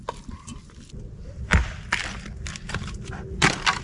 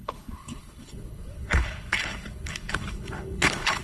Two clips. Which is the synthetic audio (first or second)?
second